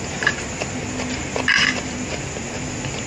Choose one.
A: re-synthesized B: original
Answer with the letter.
B